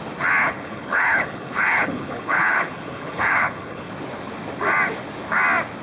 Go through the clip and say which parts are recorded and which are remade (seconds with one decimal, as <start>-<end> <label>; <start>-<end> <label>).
0.0-0.4 recorded; 0.4-3.9 remade; 3.9-5.8 recorded